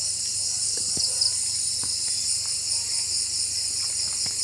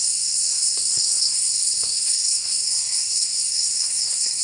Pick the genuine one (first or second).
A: first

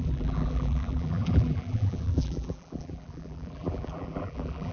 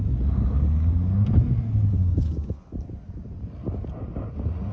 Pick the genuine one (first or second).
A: second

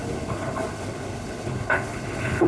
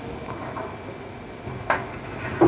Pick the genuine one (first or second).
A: second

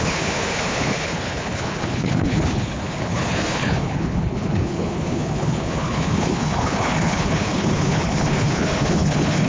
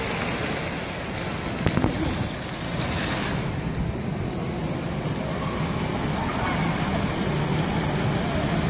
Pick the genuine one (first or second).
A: second